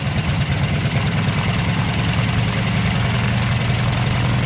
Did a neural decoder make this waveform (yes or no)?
no